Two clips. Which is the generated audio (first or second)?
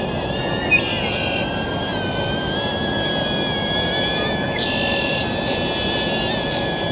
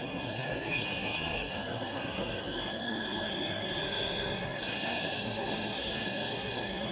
second